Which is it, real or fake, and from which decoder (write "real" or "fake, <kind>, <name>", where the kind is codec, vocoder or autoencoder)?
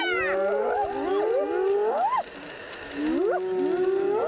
real